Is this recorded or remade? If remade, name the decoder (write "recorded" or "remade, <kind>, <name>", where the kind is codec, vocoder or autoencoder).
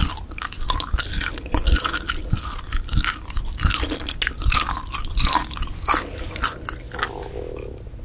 recorded